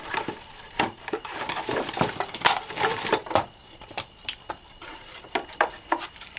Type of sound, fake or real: fake